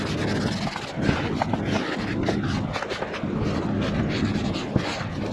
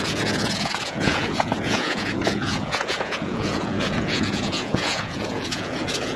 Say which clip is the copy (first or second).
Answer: second